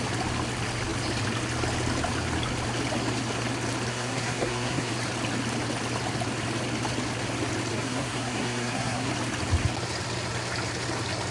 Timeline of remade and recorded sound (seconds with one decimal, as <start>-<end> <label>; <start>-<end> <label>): 0.0-3.9 recorded; 3.9-4.9 remade; 4.9-7.7 recorded; 7.7-9.1 remade; 9.1-11.3 recorded